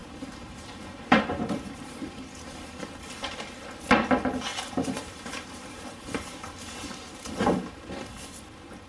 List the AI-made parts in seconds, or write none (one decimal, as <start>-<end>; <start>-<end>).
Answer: 0.0-2.8; 4.5-7.8